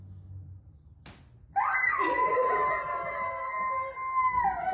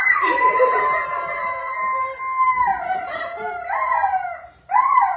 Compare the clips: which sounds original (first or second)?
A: first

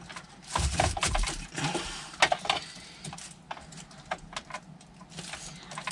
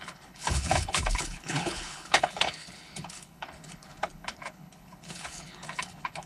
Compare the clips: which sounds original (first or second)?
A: first